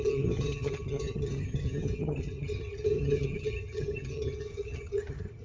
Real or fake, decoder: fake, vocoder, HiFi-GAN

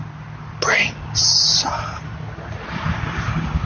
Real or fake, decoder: real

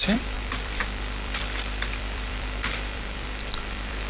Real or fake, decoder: fake, vocoder, BigVGAN v2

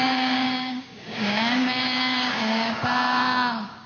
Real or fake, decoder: fake, codec, DAC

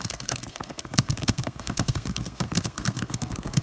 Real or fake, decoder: fake, codec, SNAC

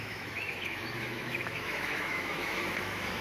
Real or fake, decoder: fake, autoencoder, DAC-VAE